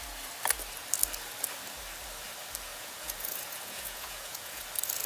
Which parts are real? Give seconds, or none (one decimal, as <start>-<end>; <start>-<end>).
0.0-2.7; 4.6-5.1

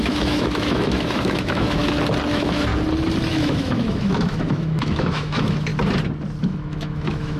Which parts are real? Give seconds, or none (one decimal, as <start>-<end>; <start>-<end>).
1.8-2.3; 2.7-3.3; 5.7-6.4

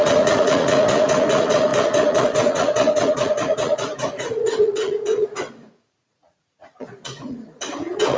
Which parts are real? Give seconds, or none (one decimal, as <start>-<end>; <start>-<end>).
none